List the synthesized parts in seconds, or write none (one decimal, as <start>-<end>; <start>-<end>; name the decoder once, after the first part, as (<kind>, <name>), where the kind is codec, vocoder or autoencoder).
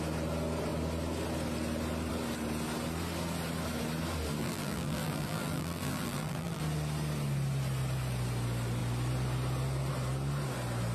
4.4-6.6 (vocoder, BigVGAN v2)